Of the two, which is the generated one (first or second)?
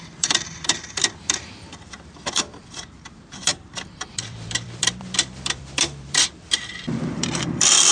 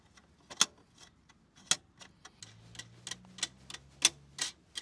first